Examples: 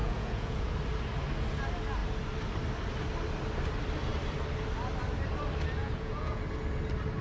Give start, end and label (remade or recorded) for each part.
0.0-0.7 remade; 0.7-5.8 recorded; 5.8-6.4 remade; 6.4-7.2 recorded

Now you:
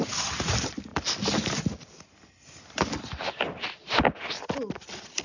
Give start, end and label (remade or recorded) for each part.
0.0-5.2 recorded